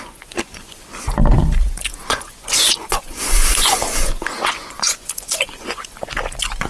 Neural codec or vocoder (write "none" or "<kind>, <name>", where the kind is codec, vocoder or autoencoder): vocoder, Vocos